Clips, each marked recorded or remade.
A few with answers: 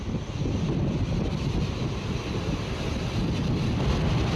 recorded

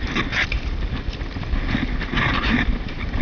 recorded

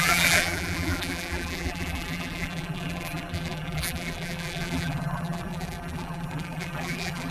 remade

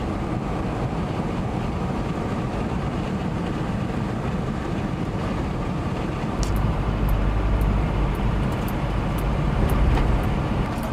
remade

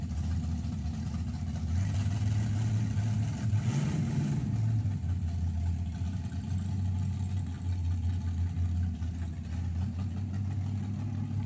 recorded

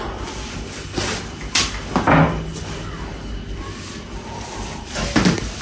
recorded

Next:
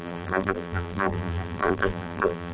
remade